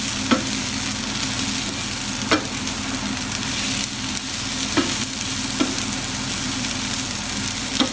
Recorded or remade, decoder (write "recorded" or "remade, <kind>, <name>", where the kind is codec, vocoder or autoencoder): recorded